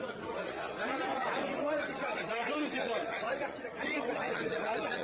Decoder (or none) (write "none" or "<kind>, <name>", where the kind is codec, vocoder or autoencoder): vocoder, Vocos